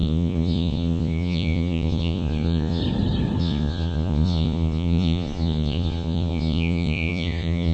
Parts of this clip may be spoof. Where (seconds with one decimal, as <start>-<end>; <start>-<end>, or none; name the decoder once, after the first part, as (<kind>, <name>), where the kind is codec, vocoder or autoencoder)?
0.0-2.8 (vocoder, Vocos); 3.4-7.7